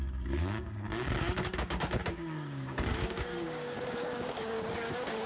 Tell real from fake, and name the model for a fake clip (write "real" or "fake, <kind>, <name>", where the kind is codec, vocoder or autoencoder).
fake, codec, DAC